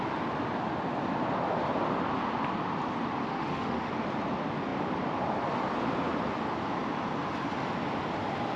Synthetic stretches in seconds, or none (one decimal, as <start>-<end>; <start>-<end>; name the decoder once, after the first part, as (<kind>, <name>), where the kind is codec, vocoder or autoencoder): 3.3-3.9 (autoencoder, DAC-VAE)